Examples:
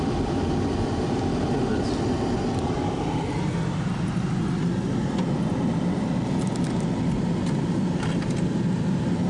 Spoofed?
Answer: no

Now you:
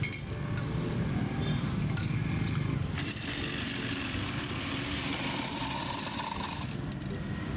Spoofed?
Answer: no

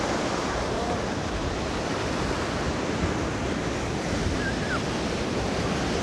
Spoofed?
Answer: no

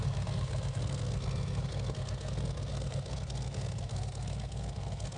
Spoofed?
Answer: yes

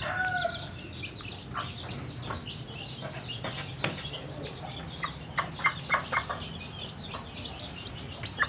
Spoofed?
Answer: no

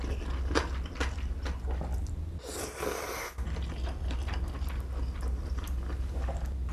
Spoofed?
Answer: no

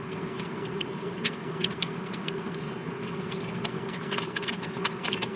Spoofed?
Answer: yes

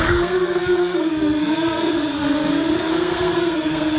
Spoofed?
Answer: yes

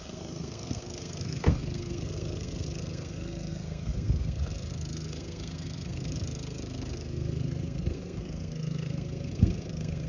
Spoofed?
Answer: yes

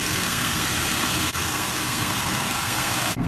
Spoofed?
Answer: yes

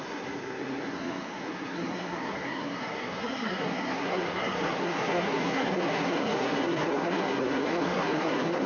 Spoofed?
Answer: yes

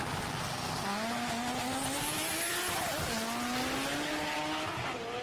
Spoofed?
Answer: no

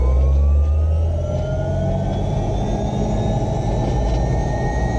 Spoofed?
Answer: no